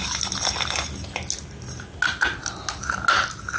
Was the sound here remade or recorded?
recorded